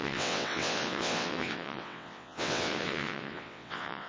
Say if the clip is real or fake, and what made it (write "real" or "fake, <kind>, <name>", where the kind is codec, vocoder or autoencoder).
fake, vocoder, WaveNeXt